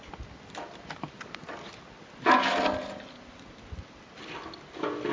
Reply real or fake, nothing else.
real